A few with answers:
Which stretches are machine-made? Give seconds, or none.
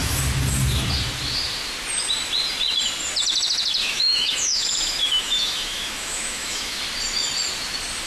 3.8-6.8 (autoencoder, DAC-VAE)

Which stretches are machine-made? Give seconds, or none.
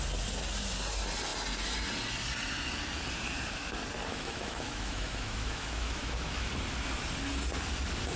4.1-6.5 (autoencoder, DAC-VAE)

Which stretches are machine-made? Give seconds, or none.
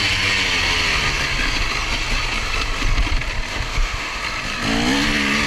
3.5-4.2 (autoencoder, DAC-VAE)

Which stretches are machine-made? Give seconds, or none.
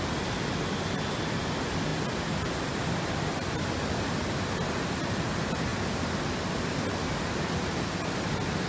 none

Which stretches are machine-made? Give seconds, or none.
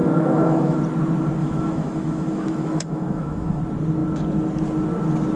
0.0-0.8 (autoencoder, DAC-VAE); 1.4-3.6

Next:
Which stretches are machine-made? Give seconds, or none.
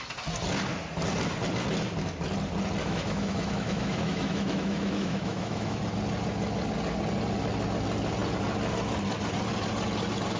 2.8-5.8 (autoencoder, DAC-VAE)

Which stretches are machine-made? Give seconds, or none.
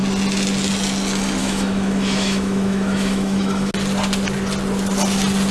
1.4-3.7 (autoencoder, DAC-VAE)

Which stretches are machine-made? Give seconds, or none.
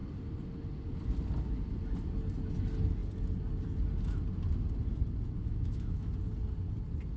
5.4-6.1 (autoencoder, DAC-VAE)